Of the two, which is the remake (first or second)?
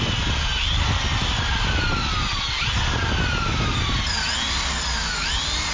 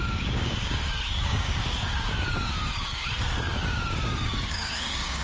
second